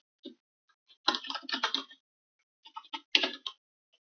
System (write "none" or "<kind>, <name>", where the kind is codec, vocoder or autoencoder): none